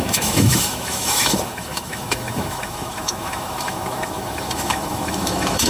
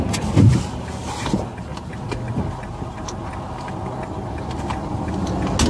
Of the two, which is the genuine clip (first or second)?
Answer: second